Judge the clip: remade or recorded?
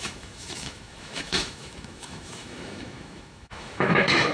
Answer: remade